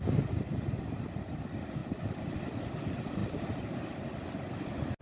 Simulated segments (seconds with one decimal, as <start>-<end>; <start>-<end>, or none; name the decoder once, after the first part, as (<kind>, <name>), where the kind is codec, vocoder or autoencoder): 0.0-1.8 (vocoder, BigVGAN v2); 2.6-3.2